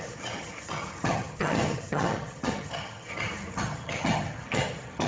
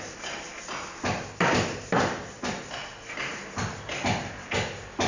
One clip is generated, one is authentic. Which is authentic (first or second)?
second